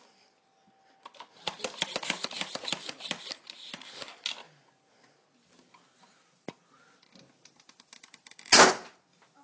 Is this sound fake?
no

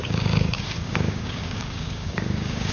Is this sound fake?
yes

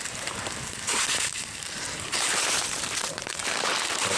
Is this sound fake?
yes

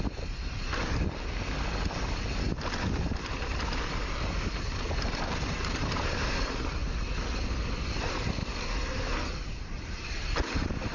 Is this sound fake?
no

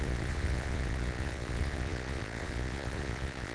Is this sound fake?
yes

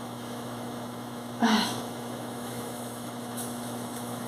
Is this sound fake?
yes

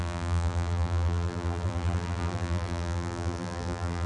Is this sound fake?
yes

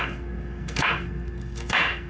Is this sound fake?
yes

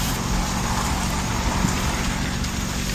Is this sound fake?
no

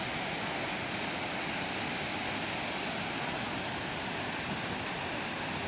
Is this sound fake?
no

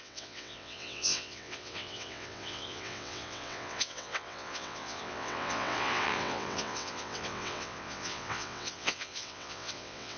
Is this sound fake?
yes